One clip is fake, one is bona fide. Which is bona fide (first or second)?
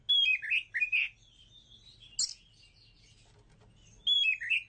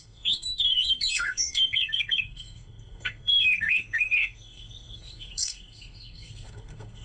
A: first